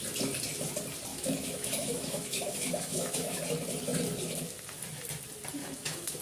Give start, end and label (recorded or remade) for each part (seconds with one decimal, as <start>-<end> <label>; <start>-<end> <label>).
0.0-1.1 recorded; 1.1-3.4 remade; 3.4-5.6 recorded; 5.6-6.2 remade